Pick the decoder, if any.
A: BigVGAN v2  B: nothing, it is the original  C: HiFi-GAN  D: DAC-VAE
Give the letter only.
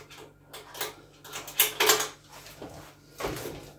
B